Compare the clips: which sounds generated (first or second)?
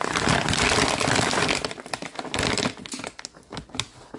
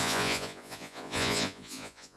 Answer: second